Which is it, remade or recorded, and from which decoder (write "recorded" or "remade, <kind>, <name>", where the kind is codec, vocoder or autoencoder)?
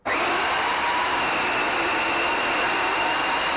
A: recorded